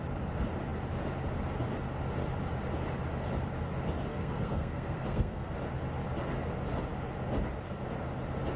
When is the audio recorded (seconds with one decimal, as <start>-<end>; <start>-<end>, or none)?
0.0-4.1; 5.5-8.6